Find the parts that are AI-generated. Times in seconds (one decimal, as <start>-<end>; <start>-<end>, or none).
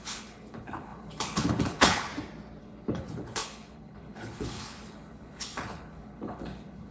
0.0-2.1; 2.6-6.9